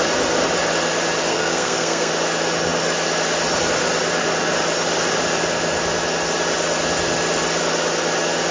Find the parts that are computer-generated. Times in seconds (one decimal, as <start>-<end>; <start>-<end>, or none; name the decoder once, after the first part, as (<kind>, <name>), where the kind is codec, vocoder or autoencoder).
1.3-2.1 (codec, SNAC)